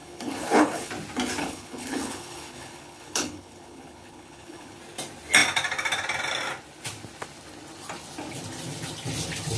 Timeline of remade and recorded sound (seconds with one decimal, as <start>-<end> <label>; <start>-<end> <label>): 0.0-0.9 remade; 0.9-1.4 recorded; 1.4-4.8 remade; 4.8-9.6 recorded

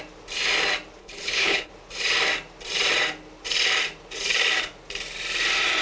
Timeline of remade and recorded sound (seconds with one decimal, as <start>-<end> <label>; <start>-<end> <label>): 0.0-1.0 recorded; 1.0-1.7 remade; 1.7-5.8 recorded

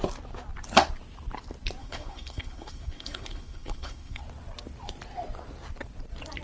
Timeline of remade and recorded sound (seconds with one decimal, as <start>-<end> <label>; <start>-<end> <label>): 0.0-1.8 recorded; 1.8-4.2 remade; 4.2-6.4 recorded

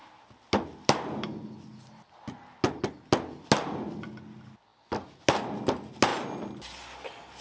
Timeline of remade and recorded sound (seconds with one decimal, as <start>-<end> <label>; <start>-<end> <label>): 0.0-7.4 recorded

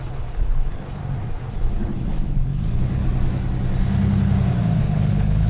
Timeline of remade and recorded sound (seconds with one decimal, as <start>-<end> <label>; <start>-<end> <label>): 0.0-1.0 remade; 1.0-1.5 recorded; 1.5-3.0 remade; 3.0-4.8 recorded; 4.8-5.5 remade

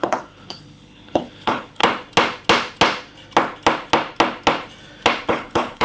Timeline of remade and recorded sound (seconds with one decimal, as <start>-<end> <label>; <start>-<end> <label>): 0.0-1.8 remade; 1.8-5.3 recorded; 5.3-5.8 remade